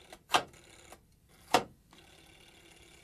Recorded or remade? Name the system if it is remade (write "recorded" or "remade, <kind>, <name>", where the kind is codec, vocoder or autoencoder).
recorded